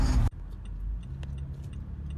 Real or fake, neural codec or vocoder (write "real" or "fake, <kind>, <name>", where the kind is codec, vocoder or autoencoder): real